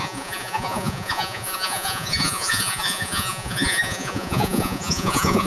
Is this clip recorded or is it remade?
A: remade